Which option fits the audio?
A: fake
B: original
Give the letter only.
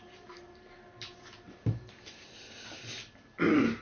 B